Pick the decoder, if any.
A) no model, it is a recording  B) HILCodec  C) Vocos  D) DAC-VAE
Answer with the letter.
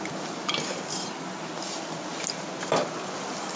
A